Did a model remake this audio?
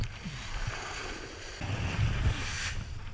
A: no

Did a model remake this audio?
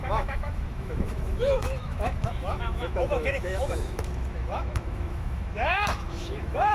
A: yes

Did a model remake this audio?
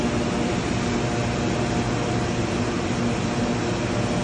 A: no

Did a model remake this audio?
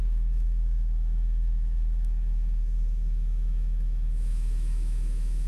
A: yes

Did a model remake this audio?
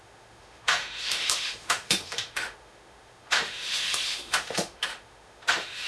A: yes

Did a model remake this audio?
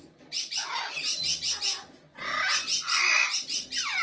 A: no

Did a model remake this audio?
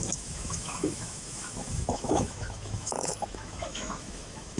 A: yes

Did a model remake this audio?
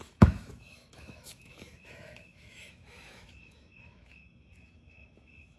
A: yes